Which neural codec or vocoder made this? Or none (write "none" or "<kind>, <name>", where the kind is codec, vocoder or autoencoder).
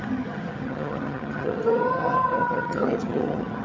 vocoder, HiFi-GAN